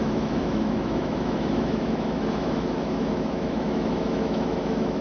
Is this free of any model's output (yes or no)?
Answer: no